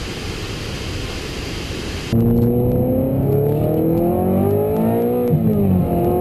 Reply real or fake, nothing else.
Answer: real